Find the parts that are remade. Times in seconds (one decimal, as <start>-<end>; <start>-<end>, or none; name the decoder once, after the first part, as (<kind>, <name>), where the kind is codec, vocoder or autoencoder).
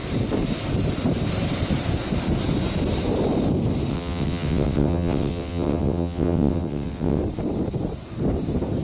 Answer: 3.9-7.2 (vocoder, WaveNeXt)